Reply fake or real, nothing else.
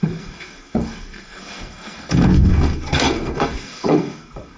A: fake